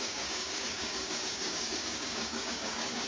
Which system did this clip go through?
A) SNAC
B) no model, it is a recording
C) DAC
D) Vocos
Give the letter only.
C